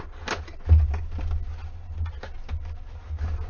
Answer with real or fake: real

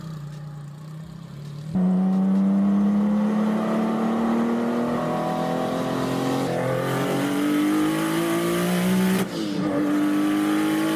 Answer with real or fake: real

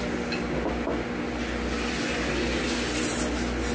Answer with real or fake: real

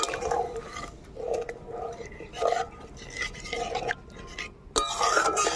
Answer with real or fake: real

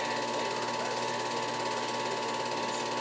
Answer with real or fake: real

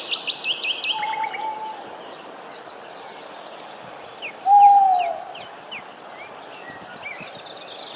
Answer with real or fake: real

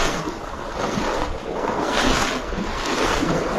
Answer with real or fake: fake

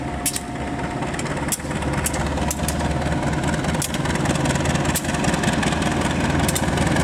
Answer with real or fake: real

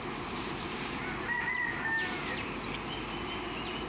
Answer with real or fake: real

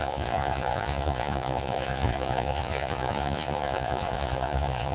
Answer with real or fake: fake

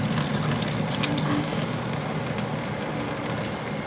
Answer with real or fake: real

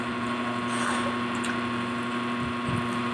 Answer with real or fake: real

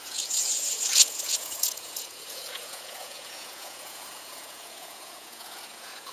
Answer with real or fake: fake